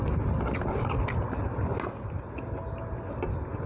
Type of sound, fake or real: real